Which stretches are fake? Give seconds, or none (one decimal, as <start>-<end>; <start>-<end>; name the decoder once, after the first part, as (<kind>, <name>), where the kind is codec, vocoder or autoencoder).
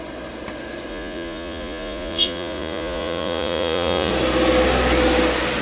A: 0.9-4.1 (vocoder, Vocos)